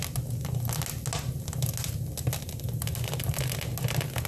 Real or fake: real